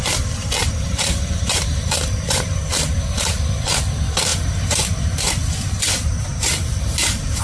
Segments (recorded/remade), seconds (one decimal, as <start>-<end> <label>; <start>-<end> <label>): 0.0-0.6 recorded; 0.6-2.6 remade; 2.6-4.3 recorded; 4.3-5.3 remade; 5.3-6.3 recorded; 6.3-7.4 remade